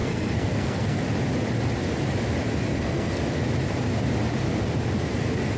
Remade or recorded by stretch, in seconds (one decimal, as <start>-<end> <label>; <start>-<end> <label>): 0.0-1.0 remade; 1.0-2.7 recorded; 2.7-3.2 remade; 3.2-5.6 recorded